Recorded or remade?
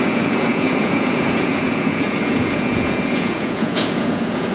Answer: remade